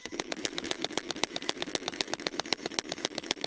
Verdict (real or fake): fake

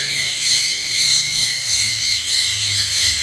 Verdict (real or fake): fake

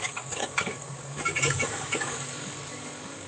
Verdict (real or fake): fake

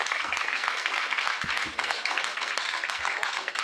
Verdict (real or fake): fake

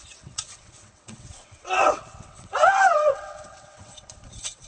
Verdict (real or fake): fake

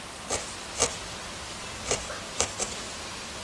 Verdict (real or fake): real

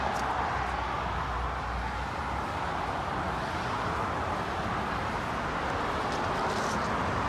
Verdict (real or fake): real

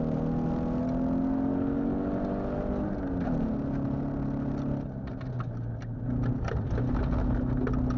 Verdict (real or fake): real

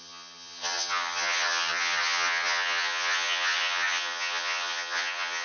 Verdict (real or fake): fake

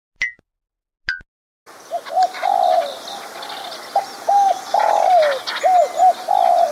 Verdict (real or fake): real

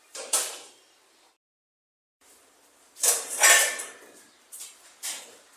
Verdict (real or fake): fake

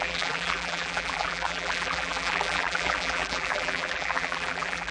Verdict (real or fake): fake